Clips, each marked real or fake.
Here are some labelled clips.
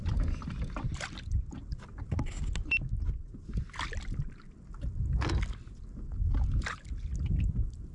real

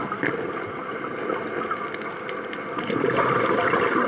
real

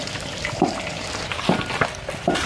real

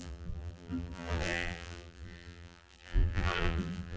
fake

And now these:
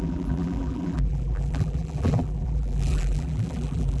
fake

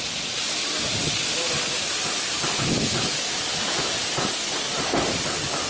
real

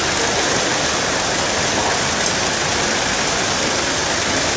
real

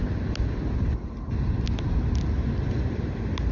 real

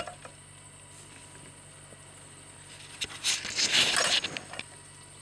real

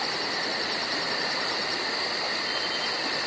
real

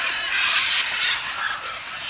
real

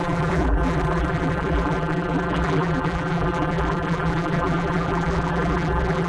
fake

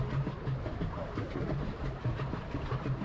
real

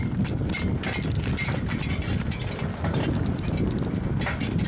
real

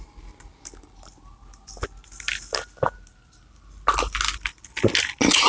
real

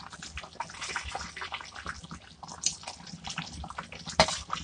real